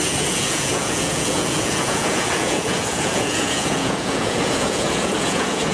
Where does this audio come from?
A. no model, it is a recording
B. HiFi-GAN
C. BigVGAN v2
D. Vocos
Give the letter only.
D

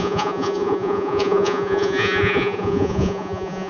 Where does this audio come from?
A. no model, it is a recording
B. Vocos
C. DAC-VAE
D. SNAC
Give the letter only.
B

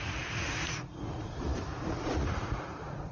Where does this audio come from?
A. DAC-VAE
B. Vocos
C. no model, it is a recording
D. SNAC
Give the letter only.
B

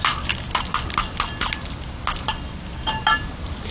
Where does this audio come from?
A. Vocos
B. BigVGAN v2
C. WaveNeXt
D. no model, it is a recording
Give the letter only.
D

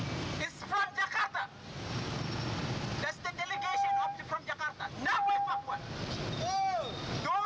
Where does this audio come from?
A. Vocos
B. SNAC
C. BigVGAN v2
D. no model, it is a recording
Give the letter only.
D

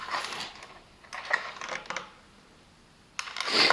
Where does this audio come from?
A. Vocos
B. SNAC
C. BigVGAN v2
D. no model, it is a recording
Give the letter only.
D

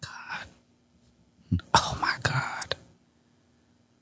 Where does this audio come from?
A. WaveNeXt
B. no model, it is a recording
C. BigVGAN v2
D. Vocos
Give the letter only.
B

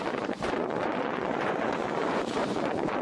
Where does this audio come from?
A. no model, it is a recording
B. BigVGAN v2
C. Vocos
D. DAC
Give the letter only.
C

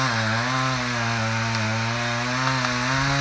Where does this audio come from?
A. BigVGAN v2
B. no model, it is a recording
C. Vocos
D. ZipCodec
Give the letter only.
B